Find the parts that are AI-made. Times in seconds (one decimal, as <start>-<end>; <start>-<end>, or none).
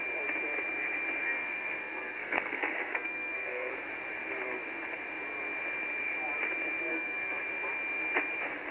1.2-3.7; 6.9-7.4